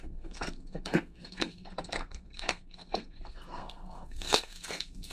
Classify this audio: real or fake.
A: fake